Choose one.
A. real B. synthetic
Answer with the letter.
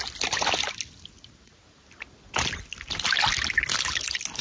A